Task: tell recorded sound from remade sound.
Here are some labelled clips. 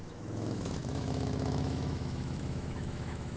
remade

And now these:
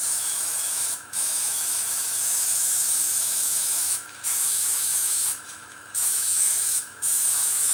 remade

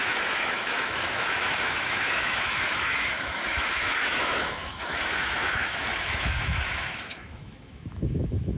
remade